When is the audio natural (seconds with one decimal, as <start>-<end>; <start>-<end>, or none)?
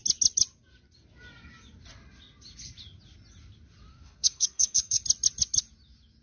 0.0-3.9; 5.0-6.2